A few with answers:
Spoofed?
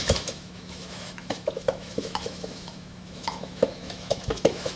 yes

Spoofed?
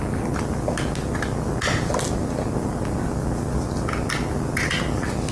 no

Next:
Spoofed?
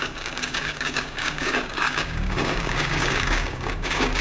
yes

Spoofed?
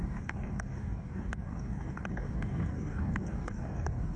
yes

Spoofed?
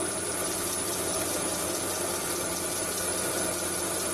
yes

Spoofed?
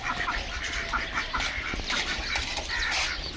no